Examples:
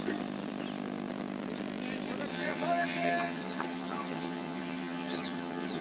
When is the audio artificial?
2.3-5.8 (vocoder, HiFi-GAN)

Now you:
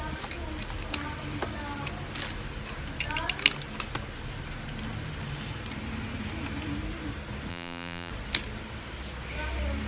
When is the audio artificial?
7.5-8.1 (vocoder, BigVGAN v2)

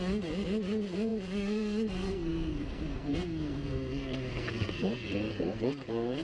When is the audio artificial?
0.0-6.2 (codec, SNAC)

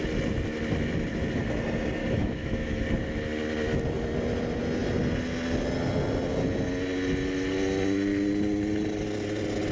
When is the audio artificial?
2.0-2.8 (autoencoder, DAC-VAE)